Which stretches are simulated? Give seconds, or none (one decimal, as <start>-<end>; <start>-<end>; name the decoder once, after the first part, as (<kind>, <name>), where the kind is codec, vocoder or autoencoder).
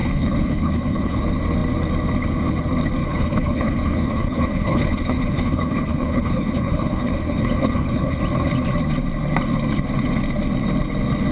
0.0-1.2 (codec, HILCodec); 3.0-8.2